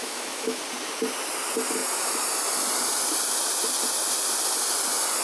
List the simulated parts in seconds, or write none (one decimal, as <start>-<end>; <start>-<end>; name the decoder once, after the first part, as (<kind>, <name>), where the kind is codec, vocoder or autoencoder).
0.0-0.6 (autoencoder, DAC-VAE)